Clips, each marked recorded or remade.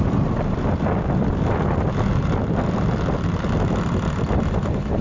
recorded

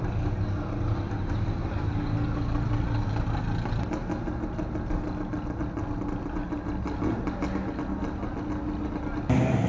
recorded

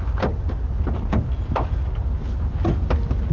recorded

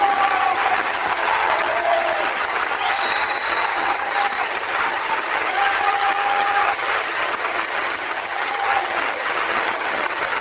remade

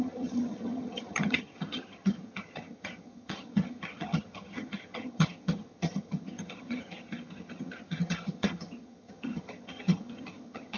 remade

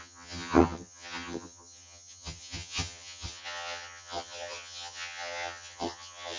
remade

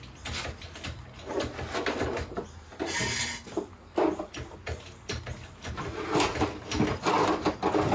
recorded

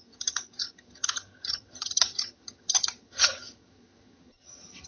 remade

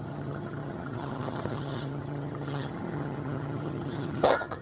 remade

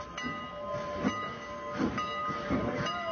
recorded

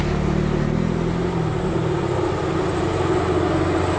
recorded